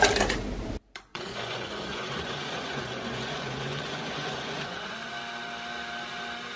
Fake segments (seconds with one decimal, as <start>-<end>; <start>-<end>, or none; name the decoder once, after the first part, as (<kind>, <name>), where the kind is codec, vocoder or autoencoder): 1.1-5.1 (vocoder, Vocos)